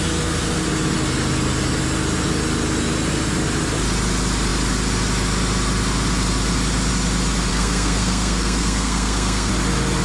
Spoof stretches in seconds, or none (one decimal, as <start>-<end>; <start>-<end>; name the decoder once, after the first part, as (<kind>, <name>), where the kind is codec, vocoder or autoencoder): 7.5-9.5 (codec, SNAC)